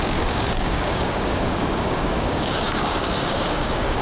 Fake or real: fake